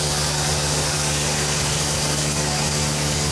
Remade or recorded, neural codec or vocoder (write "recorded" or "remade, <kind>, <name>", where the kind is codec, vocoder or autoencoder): remade, codec, DAC